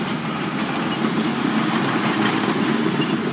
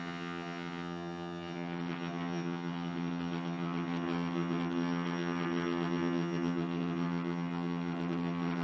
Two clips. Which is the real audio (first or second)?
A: first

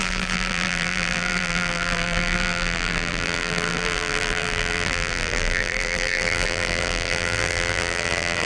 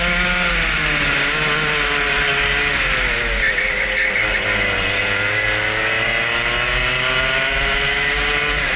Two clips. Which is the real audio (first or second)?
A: second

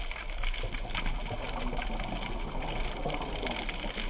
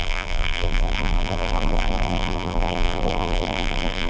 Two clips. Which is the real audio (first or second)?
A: first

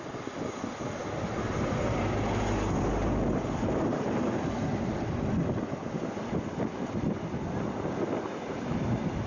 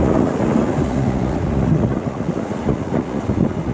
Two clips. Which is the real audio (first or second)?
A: first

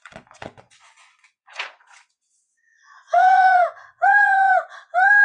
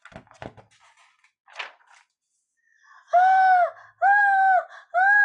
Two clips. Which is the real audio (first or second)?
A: second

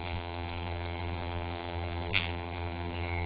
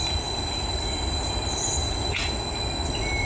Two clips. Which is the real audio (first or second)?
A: second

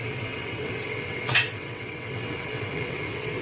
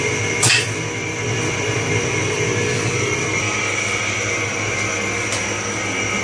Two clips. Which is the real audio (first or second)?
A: second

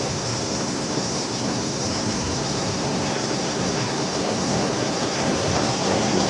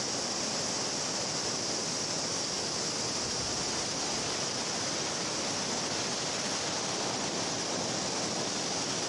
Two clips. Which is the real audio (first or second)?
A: second